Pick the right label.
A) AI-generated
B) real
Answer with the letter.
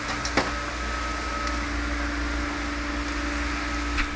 B